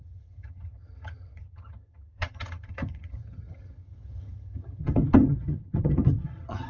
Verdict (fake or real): fake